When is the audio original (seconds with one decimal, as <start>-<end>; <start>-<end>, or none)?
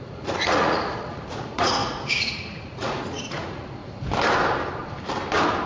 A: 3.8-5.7